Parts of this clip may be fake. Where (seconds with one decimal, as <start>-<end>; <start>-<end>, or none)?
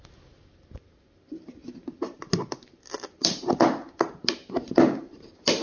none